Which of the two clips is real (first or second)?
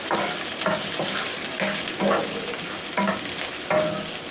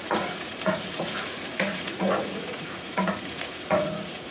first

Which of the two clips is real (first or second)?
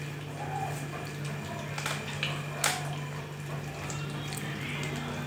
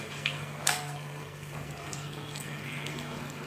first